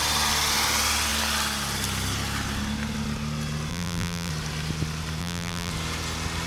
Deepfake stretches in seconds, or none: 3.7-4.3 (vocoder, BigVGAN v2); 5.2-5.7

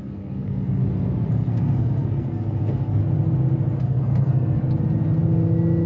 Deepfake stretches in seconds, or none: 0.0-0.8 (codec, SNAC); 1.3-3.0; 3.8-4.6